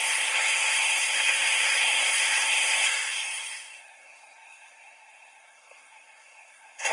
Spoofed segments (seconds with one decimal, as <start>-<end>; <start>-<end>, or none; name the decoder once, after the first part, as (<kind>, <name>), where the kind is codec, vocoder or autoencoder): 0.0-6.9 (codec, SNAC)